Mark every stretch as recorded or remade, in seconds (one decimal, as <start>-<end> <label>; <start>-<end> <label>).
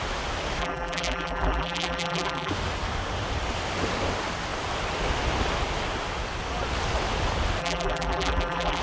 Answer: 0.0-0.6 recorded; 0.6-2.5 remade; 2.5-7.6 recorded; 7.6-8.8 remade